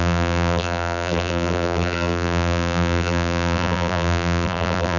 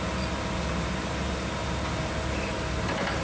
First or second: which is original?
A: second